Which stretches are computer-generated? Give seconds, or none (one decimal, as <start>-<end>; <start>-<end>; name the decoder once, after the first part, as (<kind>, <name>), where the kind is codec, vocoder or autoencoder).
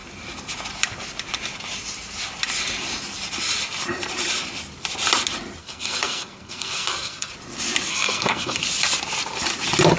5.6-7.3 (codec, SNAC); 7.9-8.6